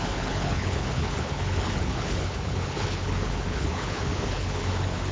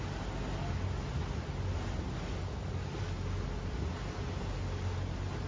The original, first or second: second